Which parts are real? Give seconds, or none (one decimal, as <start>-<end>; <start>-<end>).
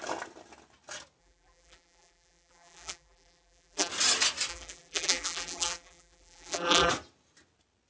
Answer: 0.0-1.2; 3.9-4.5; 6.9-7.9